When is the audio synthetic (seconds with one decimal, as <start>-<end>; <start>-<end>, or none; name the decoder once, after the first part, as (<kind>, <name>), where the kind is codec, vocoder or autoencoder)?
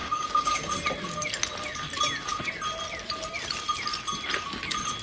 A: 0.0-0.7 (codec, DAC)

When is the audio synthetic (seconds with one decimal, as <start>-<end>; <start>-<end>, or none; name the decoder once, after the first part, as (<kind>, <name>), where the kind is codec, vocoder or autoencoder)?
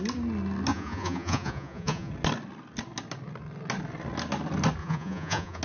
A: 0.7-2.1 (vocoder, Vocos); 4.8-5.6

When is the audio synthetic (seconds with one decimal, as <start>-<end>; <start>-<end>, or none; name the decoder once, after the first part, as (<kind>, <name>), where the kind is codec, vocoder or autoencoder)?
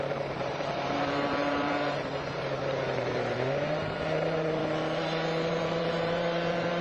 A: 0.0-4.6 (vocoder, BigVGAN v2); 5.5-6.8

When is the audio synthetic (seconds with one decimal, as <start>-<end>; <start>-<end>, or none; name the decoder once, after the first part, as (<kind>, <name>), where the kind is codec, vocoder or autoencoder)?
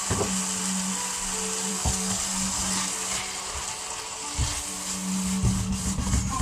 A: 1.7-2.2 (codec, SNAC)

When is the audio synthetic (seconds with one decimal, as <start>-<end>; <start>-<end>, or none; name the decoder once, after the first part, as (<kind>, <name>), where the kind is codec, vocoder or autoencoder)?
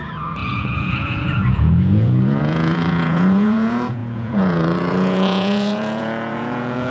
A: 0.0-6.9 (vocoder, Vocos)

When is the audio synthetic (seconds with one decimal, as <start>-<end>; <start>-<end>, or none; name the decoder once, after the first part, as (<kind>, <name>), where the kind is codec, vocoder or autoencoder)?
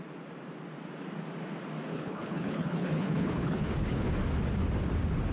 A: 1.9-4.1 (codec, HILCodec)